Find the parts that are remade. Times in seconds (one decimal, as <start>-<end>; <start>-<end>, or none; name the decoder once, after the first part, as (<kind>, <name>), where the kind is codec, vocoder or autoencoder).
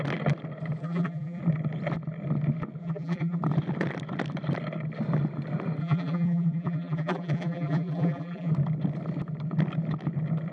0.8-1.4 (vocoder, BigVGAN v2); 2.8-3.4; 5.8-8.5